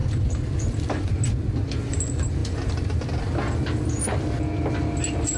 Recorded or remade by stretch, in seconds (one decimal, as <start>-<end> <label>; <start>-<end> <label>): 0.0-1.1 remade; 1.1-5.4 recorded